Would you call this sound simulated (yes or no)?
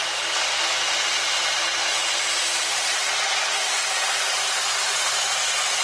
no